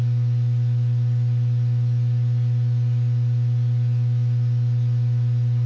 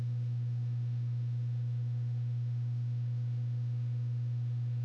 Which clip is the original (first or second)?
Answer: first